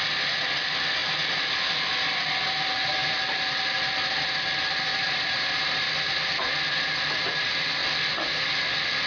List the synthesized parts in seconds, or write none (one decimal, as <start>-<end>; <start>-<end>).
4.9-6.2